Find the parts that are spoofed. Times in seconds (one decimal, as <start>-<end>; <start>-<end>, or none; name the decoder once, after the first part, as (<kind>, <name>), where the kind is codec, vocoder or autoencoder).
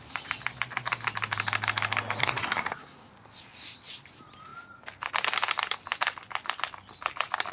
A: 2.2-3.1 (codec, SNAC)